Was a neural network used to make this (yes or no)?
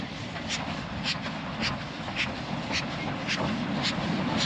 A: no